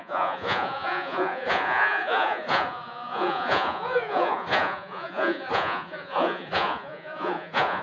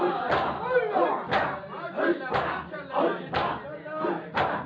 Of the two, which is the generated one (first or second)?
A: first